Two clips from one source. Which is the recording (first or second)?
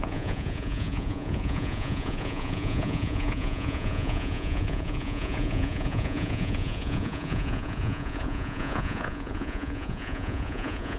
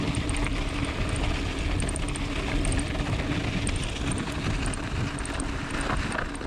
second